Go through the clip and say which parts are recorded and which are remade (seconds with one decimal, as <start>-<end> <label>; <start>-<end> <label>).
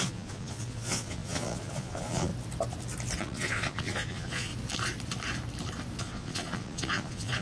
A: 0.0-2.3 remade; 2.3-3.2 recorded; 3.2-4.5 remade; 4.5-6.0 recorded; 6.0-7.4 remade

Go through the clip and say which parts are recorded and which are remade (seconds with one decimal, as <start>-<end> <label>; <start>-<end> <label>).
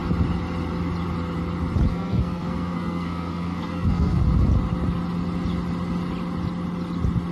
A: 0.0-1.9 recorded; 1.9-4.2 remade; 4.2-7.3 recorded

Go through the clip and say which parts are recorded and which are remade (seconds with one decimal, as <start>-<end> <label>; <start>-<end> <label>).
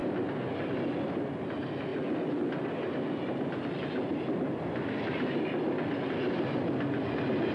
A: 0.0-7.5 recorded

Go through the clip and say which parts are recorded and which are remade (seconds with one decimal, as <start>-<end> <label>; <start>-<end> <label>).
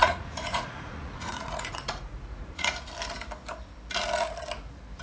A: 0.0-2.9 remade; 2.9-5.0 recorded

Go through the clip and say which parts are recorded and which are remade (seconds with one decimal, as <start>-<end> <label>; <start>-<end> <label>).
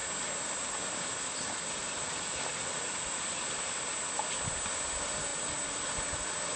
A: 0.0-1.8 recorded; 1.8-3.9 remade; 3.9-5.3 recorded; 5.3-5.8 remade; 5.8-6.6 recorded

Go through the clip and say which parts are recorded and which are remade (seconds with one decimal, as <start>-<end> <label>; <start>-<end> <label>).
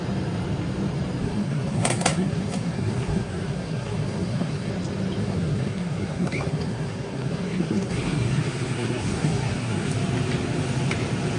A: 0.0-1.2 recorded; 1.2-4.7 remade; 4.7-5.2 recorded; 5.2-9.9 remade; 9.9-11.4 recorded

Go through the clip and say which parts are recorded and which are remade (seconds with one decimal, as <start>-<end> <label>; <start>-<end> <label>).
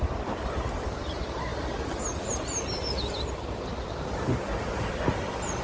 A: 0.0-5.6 recorded